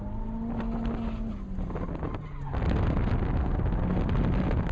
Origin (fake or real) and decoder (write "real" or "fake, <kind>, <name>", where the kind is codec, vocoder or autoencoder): real